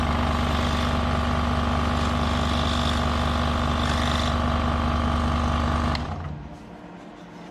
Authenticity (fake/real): real